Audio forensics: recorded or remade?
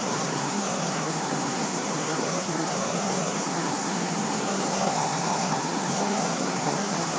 remade